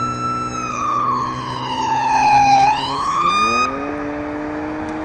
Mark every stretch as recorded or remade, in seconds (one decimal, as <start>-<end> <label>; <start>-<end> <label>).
0.0-0.7 recorded; 0.7-3.3 remade; 3.3-5.0 recorded